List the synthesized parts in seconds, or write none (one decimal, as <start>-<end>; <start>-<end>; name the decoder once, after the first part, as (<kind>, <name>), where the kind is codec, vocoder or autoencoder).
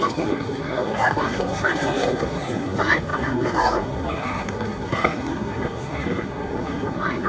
0.0-7.3 (codec, SNAC)